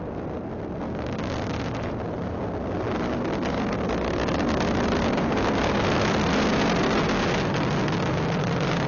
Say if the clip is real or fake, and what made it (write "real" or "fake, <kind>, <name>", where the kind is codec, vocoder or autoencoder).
real